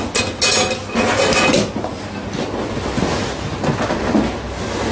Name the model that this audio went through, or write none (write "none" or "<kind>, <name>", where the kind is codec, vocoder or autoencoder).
none